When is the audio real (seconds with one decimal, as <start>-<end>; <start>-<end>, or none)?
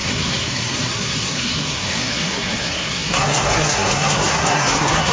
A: none